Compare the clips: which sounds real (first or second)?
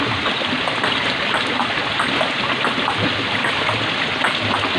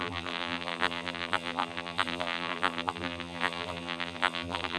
first